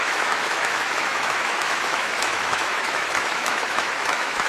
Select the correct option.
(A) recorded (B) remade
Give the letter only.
B